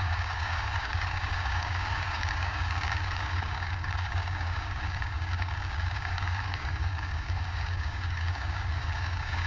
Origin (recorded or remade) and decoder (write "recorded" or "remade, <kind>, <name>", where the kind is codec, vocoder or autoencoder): remade, codec, DAC